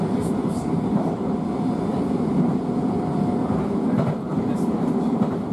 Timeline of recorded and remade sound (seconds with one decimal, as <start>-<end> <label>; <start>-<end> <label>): 0.0-0.5 recorded; 0.5-1.5 remade; 1.5-1.9 recorded; 1.9-3.7 remade; 3.7-5.5 recorded